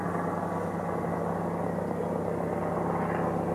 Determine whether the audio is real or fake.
real